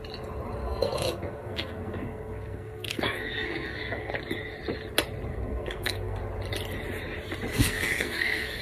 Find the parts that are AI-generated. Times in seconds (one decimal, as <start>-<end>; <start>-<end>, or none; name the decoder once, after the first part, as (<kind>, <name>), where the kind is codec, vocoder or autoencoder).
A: 0.6-4.1 (codec, SNAC); 5.3-6.2; 7.5-8.6